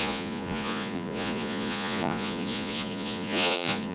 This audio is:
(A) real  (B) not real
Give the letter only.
B